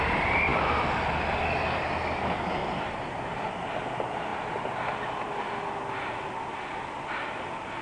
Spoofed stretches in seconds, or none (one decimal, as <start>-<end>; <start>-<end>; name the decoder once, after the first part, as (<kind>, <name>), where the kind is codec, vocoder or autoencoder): 0.5-1.1 (vocoder, BigVGAN v2); 2.6-3.5